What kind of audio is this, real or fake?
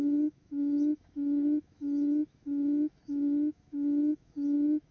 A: fake